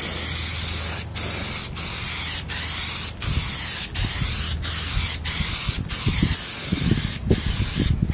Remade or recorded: recorded